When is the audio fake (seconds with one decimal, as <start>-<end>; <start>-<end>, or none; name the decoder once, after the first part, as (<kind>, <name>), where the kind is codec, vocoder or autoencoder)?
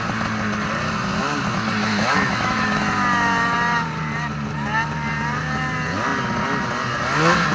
1.9-2.8 (autoencoder, DAC-VAE)